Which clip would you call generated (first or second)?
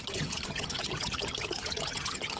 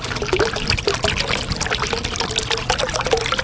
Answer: first